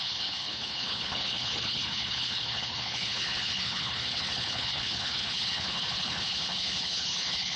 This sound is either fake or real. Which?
fake